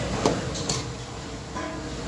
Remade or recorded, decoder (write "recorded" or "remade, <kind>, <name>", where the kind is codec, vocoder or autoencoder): recorded